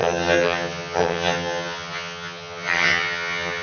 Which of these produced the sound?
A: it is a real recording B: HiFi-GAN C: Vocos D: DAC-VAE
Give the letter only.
B